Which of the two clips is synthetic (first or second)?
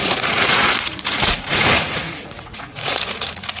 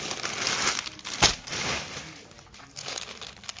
first